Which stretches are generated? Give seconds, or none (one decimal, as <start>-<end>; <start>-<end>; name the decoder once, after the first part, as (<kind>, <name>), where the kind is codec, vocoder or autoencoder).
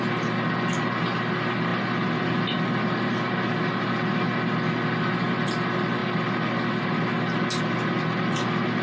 none